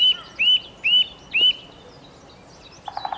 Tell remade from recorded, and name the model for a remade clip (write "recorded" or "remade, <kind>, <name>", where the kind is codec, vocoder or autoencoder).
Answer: recorded